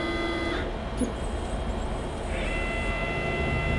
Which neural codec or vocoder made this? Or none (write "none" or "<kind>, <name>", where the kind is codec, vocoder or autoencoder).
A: none